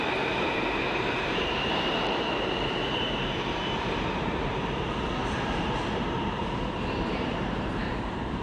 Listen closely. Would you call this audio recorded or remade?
remade